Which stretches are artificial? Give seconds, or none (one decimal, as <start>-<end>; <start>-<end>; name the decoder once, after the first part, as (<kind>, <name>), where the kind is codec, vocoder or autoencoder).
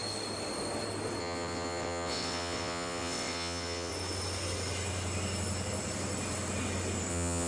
1.2-3.9 (vocoder, WaveNeXt); 7.1-7.5